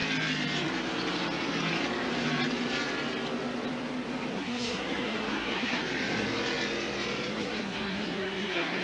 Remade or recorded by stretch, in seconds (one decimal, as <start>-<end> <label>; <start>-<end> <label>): 0.0-4.3 recorded; 4.3-5.8 remade; 5.8-7.3 recorded; 7.3-8.8 remade